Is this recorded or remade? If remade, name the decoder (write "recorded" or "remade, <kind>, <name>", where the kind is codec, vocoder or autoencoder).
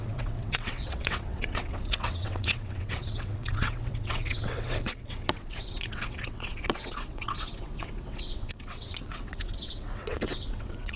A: remade, vocoder, WaveNeXt